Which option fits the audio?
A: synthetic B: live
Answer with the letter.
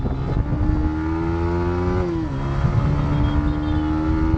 B